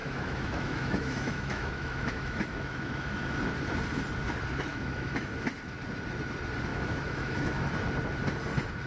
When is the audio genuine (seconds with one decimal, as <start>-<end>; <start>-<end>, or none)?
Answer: 3.4-4.7; 5.3-6.7; 7.7-8.9